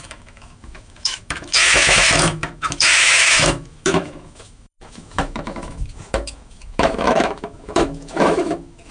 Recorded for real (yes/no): no